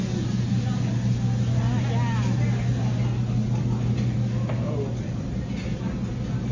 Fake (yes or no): no